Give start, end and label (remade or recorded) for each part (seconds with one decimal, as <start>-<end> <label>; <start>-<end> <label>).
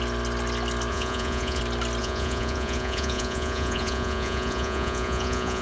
0.0-0.9 recorded; 0.9-1.6 remade; 1.6-2.0 recorded; 2.0-5.6 remade